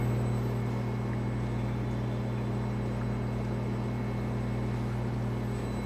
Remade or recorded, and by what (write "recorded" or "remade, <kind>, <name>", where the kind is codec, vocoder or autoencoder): recorded